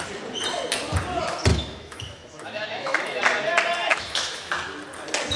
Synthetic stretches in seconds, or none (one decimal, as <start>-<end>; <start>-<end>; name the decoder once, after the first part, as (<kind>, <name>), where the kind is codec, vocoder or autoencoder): 1.5-3.2 (autoencoder, DAC-VAE); 3.9-4.5